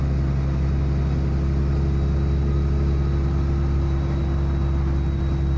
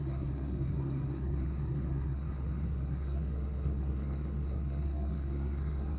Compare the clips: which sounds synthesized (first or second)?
second